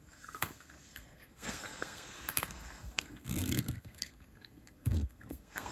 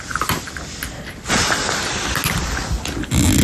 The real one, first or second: second